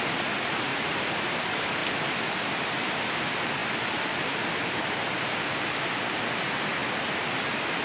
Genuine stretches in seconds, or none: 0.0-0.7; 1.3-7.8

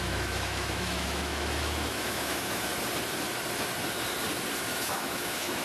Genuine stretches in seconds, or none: 2.7-4.7

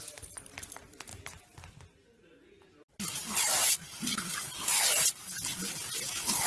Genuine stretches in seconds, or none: 0.0-6.5

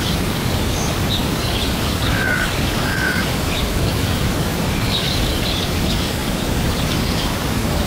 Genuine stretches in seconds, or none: none

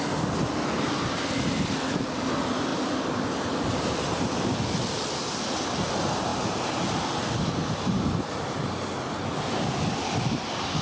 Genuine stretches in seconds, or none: 0.0-10.8

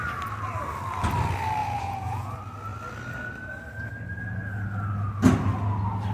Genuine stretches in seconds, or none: 0.0-1.6; 2.3-6.1